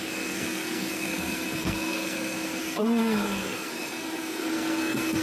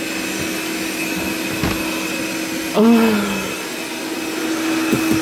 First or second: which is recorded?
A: second